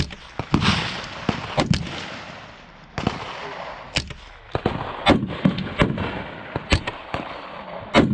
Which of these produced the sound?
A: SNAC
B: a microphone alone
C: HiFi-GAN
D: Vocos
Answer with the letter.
B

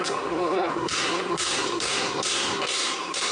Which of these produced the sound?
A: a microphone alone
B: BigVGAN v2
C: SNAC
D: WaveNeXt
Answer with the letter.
C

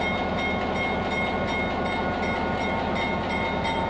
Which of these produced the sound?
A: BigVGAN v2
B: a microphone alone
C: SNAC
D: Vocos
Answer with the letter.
B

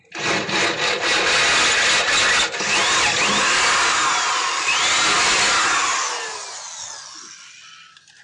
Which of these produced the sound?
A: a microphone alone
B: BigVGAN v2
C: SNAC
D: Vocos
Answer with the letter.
A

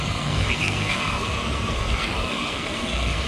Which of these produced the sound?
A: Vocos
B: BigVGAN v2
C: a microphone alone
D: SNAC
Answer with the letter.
D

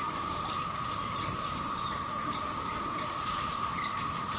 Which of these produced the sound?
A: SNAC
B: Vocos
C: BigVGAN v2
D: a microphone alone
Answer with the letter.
D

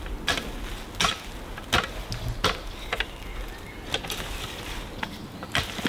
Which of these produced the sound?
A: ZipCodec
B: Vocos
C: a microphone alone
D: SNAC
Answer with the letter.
C